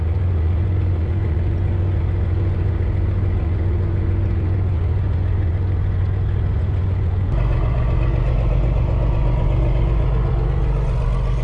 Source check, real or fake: fake